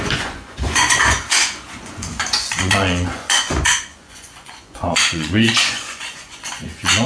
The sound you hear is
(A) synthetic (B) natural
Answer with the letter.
A